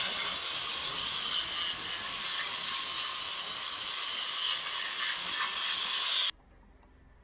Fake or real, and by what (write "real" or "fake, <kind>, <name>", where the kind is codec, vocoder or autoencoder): real